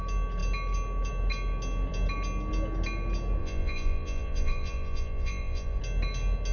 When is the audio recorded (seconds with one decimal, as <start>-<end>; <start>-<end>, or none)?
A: 0.0-3.4; 5.8-6.5